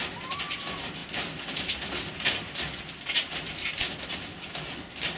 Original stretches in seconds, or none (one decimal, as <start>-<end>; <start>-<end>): 0.0-5.2